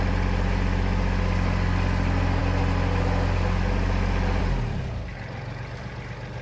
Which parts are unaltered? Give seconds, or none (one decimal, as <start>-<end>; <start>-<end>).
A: 0.0-6.4